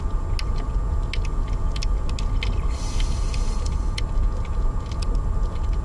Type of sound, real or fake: real